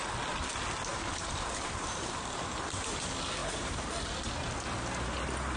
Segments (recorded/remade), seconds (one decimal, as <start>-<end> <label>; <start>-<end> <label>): 0.0-0.9 recorded; 0.9-3.0 remade; 3.0-3.4 recorded; 3.4-4.2 remade; 4.2-5.6 recorded